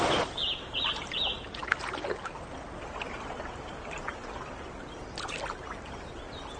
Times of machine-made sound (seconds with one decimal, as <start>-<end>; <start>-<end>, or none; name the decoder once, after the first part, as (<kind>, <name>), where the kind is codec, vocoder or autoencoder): none